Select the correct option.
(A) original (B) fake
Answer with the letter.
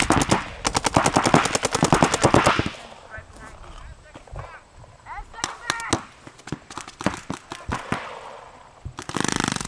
A